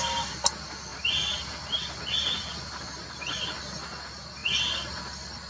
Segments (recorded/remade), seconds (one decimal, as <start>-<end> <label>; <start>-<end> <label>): 0.0-5.5 recorded